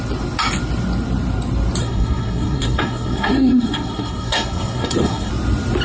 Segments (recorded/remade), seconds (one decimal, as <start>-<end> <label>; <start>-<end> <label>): 0.0-1.8 recorded; 1.8-5.3 remade; 5.3-5.8 recorded